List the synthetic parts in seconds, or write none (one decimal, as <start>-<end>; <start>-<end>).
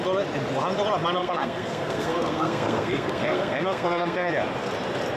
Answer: 1.2-4.3